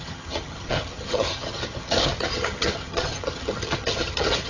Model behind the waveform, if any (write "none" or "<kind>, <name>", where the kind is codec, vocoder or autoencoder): vocoder, HiFi-GAN